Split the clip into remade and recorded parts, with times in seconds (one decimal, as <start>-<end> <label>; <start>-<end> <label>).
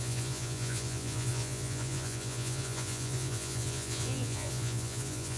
0.0-5.4 remade